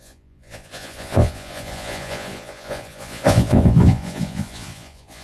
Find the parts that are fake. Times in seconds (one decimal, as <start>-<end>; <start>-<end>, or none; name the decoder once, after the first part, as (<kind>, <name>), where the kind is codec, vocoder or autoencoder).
0.0-5.2 (vocoder, Vocos)